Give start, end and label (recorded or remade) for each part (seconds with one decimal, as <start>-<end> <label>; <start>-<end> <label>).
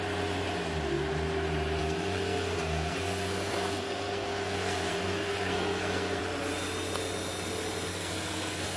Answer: 0.0-1.8 recorded; 1.8-6.2 remade; 6.2-7.9 recorded; 7.9-8.8 remade